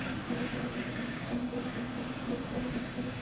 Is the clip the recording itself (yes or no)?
no